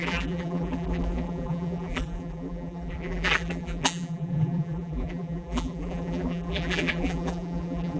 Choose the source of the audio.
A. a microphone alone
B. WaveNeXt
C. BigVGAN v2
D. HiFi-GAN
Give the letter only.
C